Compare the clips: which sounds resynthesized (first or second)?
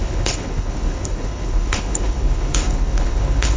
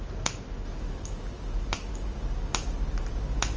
first